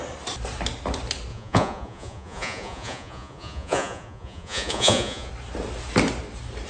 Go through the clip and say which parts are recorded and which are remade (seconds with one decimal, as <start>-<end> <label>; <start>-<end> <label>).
0.0-1.3 recorded; 1.3-5.3 remade; 5.3-6.7 recorded